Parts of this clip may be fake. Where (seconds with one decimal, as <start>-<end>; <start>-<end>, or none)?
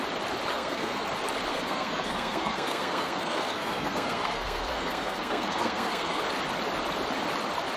0.5-1.1; 1.5-6.2